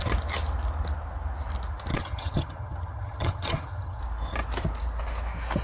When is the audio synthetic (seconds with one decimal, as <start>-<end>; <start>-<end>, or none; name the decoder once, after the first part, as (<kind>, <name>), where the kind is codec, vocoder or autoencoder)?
1.9-4.0 (vocoder, HiFi-GAN)